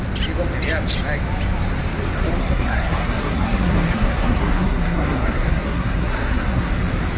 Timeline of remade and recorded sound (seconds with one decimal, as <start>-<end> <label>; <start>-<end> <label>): 0.0-2.4 recorded; 2.4-6.7 remade; 6.7-7.2 recorded